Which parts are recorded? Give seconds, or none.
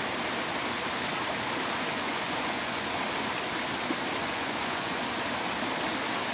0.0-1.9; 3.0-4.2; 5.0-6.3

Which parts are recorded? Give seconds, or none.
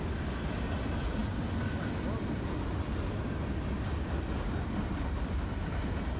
0.0-6.2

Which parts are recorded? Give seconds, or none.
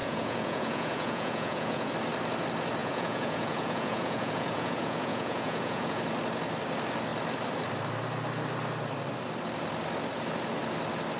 1.9-2.8; 6.0-11.2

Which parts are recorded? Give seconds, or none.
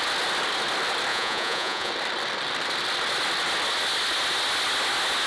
0.0-1.1; 1.9-5.3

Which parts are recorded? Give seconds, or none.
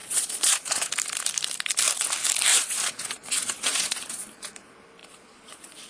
0.9-2.5; 4.5-5.0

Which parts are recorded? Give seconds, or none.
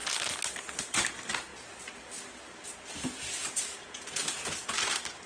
0.0-3.4; 4.7-5.3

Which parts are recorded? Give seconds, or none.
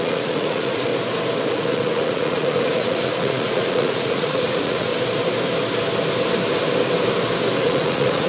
0.9-1.5; 4.9-7.6